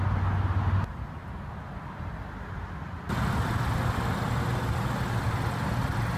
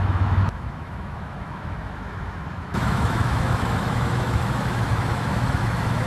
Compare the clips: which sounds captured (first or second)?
first